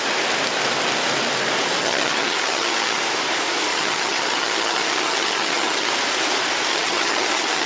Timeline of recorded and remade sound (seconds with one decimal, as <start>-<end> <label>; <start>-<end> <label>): 0.0-1.8 recorded; 1.8-3.0 remade; 3.0-3.7 recorded; 3.7-5.9 remade; 5.9-6.7 recorded; 6.7-7.7 remade